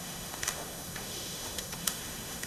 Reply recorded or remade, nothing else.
remade